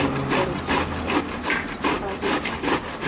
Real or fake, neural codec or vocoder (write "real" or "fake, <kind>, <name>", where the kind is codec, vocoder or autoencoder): real